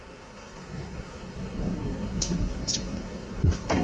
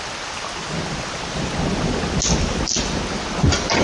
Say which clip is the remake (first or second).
first